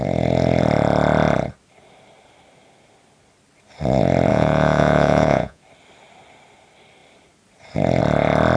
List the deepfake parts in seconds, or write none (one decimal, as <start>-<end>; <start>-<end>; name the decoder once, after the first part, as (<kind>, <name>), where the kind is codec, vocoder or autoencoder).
4.3-5.6 (vocoder, Vocos)